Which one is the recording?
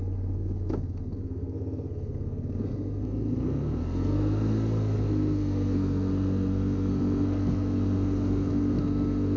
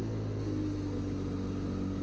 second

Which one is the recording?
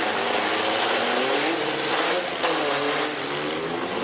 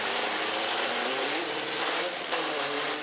first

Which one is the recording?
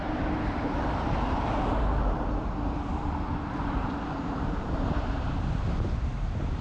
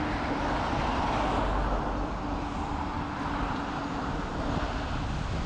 second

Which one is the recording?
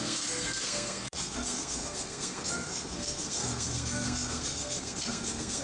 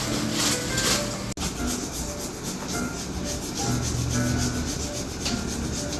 second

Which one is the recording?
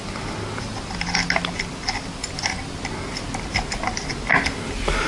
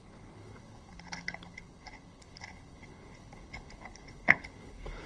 first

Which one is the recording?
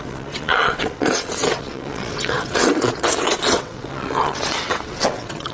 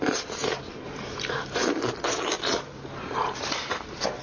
second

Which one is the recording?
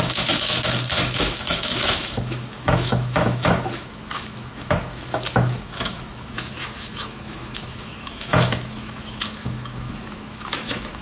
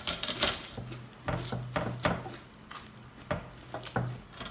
second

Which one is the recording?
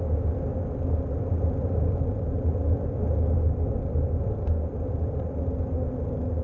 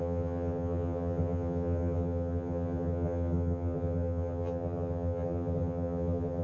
first